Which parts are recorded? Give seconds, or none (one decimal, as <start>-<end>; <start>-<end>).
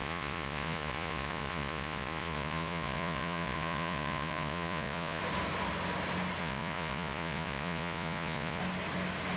5.2-6.4; 8.6-9.4